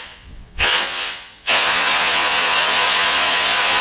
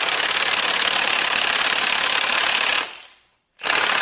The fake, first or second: first